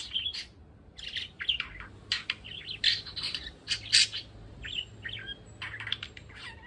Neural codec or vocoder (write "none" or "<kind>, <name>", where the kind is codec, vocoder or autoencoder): none